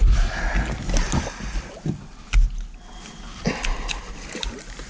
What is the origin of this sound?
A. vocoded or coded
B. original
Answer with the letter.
B